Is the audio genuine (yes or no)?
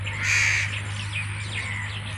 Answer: yes